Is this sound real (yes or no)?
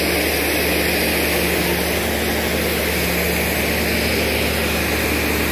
yes